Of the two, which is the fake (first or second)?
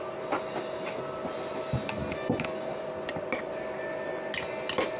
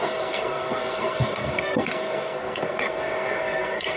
second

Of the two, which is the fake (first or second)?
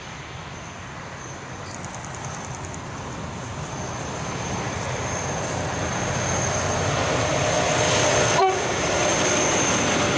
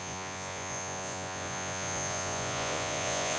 second